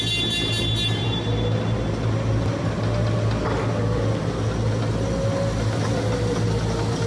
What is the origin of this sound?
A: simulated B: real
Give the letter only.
B